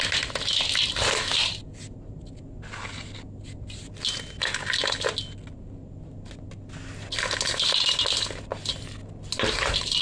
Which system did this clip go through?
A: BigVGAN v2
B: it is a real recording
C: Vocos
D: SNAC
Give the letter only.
B